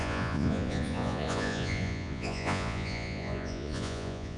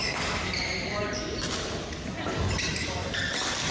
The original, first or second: second